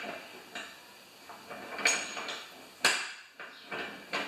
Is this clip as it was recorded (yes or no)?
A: yes